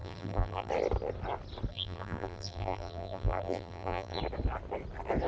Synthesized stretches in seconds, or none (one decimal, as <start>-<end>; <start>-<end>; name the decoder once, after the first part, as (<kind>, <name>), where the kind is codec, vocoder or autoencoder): 0.0-0.7 (vocoder, BigVGAN v2); 1.7-4.2